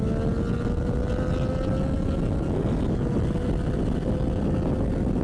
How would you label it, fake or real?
real